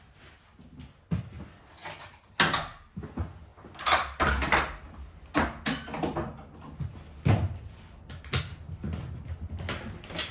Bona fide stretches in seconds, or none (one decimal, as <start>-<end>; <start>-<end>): 0.0-10.3